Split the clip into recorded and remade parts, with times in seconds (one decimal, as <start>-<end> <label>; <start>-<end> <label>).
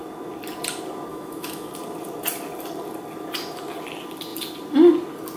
0.0-1.1 recorded; 1.1-1.7 remade; 1.7-5.4 recorded